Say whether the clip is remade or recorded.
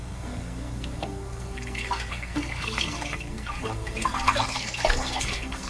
remade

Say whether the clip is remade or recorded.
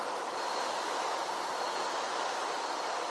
recorded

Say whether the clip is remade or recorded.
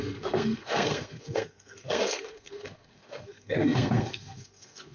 remade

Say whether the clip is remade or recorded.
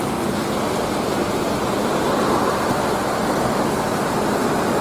recorded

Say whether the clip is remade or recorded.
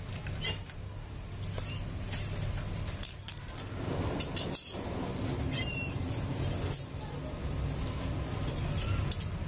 recorded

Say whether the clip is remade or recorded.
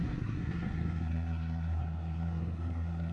remade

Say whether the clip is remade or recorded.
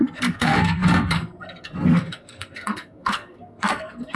remade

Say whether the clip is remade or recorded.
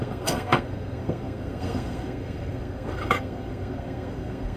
remade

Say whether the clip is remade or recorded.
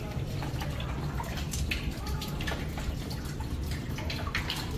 recorded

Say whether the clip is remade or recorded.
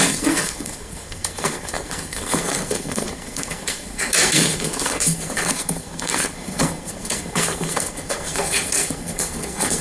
remade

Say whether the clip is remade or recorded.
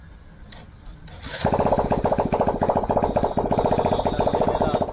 recorded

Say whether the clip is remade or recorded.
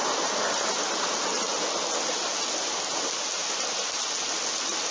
recorded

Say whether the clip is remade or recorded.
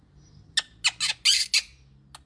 recorded